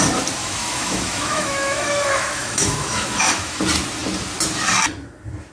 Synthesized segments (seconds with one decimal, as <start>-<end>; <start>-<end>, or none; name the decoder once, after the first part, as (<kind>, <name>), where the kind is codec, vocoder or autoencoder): 0.4-3.6 (autoencoder, DAC-VAE)